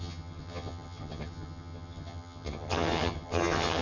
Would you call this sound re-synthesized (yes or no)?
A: yes